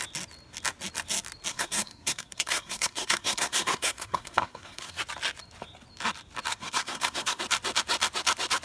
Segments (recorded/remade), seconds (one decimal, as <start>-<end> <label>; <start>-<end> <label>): 0.0-1.5 recorded; 1.5-5.0 remade; 5.0-6.5 recorded; 6.5-7.4 remade; 7.4-8.6 recorded